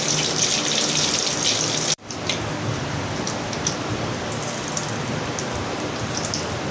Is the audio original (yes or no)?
no